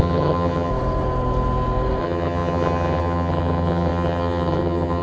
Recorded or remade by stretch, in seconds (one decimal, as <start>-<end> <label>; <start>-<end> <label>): 0.0-0.7 remade; 0.7-2.0 recorded; 2.0-5.0 remade